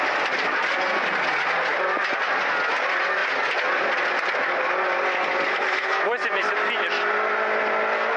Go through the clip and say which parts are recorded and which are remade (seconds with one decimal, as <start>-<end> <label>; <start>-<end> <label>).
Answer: 0.0-5.5 recorded; 5.5-6.0 remade; 6.0-8.2 recorded